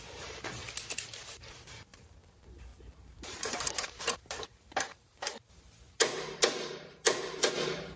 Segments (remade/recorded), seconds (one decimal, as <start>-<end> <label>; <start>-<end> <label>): 0.0-0.6 remade; 0.6-1.3 recorded; 1.3-8.0 remade